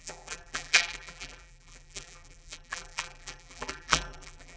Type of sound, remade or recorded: remade